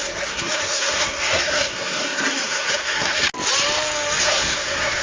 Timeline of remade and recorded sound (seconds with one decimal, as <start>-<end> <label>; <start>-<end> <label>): 0.0-3.3 remade; 3.3-4.2 recorded; 4.2-5.0 remade